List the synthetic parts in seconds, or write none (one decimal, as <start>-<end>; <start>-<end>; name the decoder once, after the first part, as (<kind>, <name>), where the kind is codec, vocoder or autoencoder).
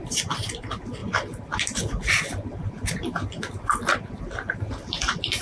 none